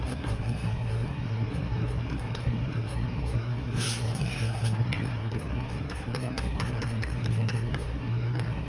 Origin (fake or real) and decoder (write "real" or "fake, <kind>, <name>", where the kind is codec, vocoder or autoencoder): fake, codec, SNAC